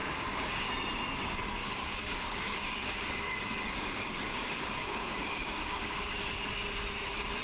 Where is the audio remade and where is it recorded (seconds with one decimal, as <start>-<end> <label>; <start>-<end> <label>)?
0.0-0.7 remade; 0.7-1.6 recorded; 1.6-6.0 remade; 6.0-7.4 recorded